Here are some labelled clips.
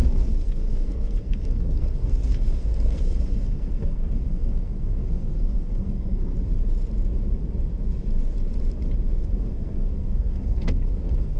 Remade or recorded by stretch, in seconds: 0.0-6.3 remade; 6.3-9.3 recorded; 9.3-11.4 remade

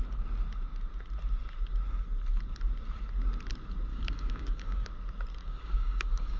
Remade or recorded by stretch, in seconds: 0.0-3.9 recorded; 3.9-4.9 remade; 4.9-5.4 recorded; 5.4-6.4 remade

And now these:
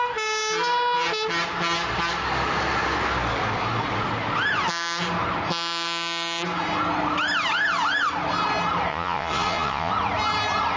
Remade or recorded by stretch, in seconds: 0.0-8.9 recorded; 8.9-9.9 remade; 9.9-10.8 recorded

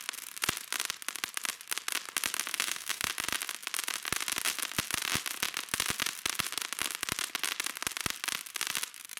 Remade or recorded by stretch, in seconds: 0.0-2.5 recorded; 2.5-3.1 remade; 3.1-9.2 recorded

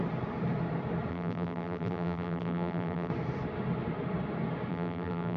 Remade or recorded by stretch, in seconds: 0.0-1.1 recorded; 1.1-3.1 remade; 3.1-4.7 recorded; 4.7-5.4 remade

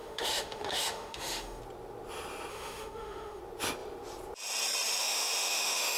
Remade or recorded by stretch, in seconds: 0.0-1.6 remade; 1.6-2.5 recorded; 2.5-3.4 remade; 3.4-5.0 recorded; 5.0-6.0 remade

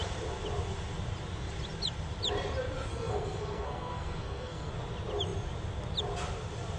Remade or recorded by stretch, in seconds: 0.0-2.9 recorded; 2.9-4.7 remade; 4.7-6.8 recorded